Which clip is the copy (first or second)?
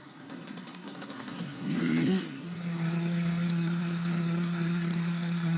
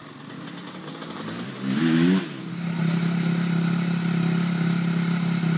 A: first